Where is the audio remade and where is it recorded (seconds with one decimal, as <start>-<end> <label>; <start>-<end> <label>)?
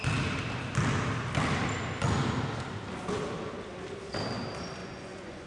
0.0-4.8 recorded; 4.8-5.5 remade